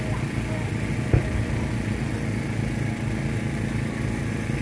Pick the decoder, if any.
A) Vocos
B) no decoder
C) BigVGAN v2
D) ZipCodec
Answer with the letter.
B